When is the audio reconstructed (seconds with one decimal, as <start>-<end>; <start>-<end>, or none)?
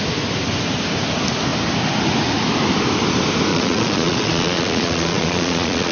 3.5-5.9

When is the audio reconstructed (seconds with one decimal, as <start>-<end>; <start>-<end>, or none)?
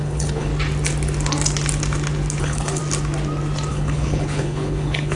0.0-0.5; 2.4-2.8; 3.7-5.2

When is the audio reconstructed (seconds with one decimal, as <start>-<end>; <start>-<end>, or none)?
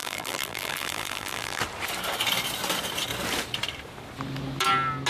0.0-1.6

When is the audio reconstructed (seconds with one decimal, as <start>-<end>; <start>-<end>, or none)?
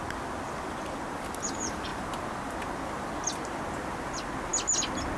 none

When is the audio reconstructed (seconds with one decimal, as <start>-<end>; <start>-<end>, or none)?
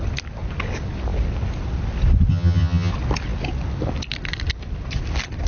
2.3-2.9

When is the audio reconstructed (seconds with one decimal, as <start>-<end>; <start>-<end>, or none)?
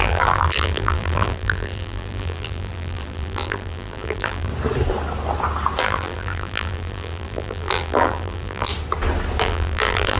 0.0-4.5; 5.8-8.7; 9.4-10.2